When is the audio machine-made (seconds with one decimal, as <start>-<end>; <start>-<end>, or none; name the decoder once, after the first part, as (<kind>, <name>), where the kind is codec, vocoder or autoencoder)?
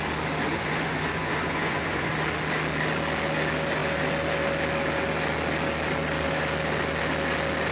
0.5-2.1 (vocoder, Vocos)